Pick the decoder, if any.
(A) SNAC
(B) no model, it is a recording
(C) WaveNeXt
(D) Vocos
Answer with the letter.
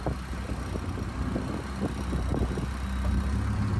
B